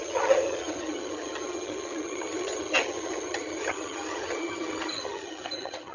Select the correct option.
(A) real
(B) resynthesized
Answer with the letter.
B